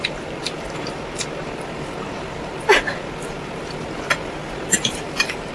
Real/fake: fake